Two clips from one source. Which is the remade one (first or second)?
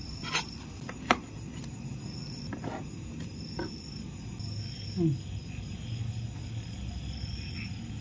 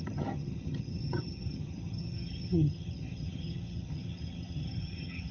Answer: second